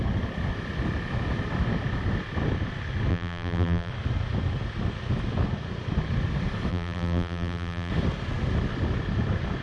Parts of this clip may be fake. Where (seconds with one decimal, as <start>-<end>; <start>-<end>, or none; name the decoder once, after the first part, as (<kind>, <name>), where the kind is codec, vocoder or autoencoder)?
3.1-3.9 (vocoder, BigVGAN v2); 6.7-7.9